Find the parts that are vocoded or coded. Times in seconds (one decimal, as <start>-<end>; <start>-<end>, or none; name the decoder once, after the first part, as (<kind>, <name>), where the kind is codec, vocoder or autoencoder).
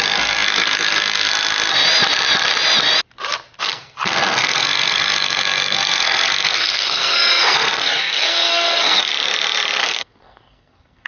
0.0-1.3 (codec, SNAC); 3.6-9.1; 9.8-11.1